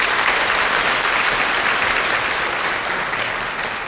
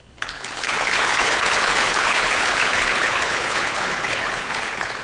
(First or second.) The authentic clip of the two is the first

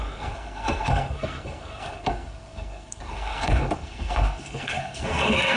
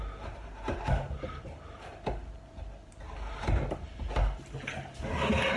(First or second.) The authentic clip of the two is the second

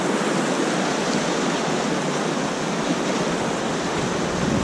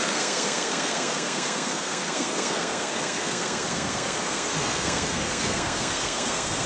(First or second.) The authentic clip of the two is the first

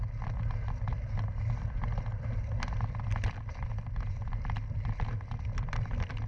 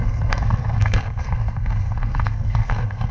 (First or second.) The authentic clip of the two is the first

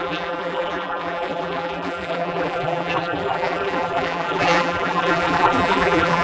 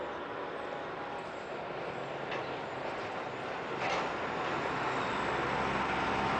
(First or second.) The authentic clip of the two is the second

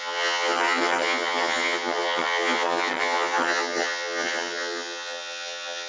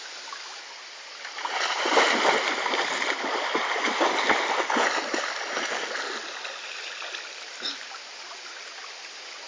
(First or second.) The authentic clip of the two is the second